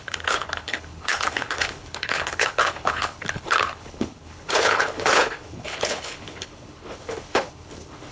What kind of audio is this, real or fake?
fake